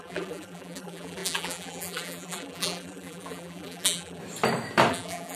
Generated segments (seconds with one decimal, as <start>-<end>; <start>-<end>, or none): 0.0-4.2; 4.9-5.4